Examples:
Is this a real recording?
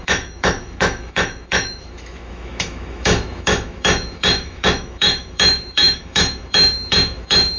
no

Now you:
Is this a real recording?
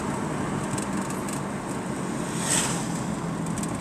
yes